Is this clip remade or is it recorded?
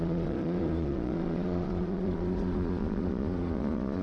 remade